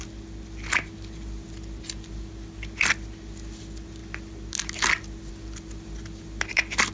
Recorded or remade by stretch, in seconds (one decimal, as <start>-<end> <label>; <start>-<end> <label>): 0.0-6.9 recorded